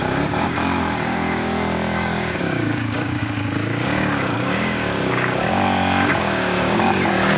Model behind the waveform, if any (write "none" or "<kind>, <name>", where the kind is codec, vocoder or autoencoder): codec, DAC